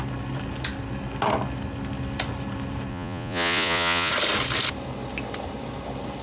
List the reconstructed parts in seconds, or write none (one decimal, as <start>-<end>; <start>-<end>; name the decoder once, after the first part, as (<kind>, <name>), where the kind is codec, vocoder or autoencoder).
2.9-4.1 (vocoder, Vocos)